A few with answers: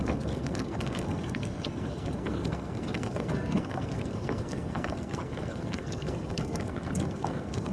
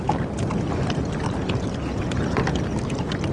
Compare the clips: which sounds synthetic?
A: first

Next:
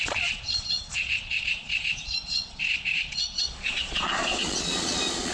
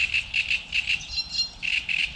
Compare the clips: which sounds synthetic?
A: first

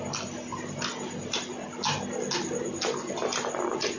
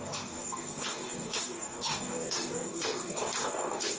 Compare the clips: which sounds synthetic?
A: second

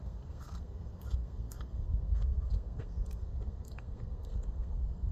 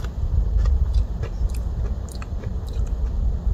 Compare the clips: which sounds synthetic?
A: first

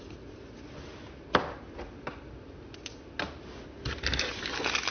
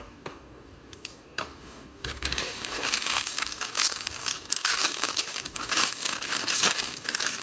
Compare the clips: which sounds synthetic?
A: second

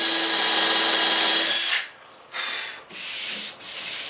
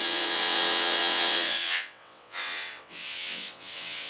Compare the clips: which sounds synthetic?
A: second